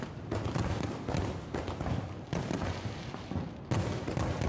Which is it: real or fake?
real